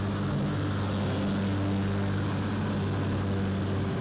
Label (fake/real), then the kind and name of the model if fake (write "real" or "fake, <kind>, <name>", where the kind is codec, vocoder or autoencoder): real